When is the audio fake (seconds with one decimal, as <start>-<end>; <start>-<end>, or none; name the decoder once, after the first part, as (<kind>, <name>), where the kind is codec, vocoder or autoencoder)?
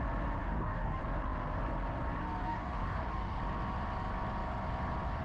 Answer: 0.4-1.0 (codec, DAC); 2.4-3.4